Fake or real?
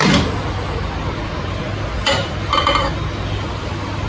real